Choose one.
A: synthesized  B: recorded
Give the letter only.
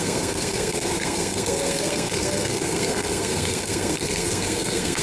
A